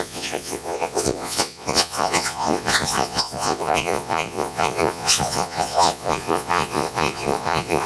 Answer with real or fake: fake